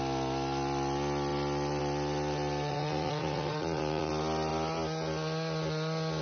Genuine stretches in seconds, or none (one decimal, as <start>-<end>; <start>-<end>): 0.0-2.7; 4.1-6.2